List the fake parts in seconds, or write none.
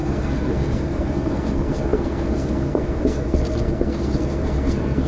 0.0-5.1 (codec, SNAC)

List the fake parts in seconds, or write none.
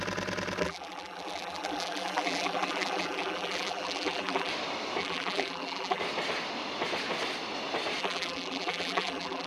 0.6-4.5 (vocoder, BigVGAN v2); 5.0-6.0; 8.0-9.5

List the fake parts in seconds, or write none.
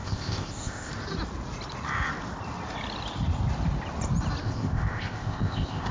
0.0-0.9 (codec, ZipCodec); 4.4-5.9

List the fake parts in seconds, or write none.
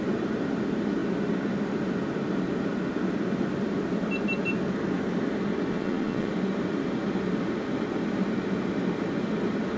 5.7-6.3 (vocoder, Vocos)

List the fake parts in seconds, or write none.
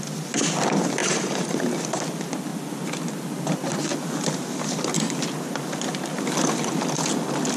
1.0-1.5 (vocoder, BigVGAN v2)